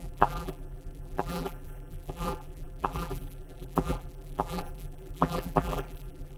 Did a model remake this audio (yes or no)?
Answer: yes